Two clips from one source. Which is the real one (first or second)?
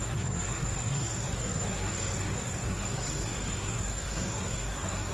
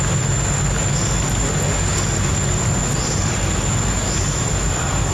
second